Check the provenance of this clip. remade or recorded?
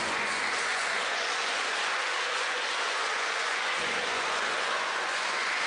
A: remade